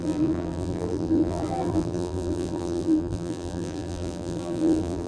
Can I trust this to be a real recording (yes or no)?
no